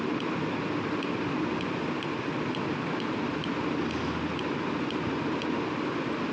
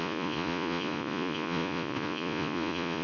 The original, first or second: first